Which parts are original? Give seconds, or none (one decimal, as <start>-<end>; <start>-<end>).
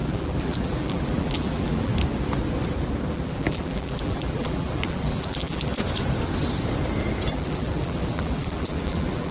1.9-3.1; 5.7-7.3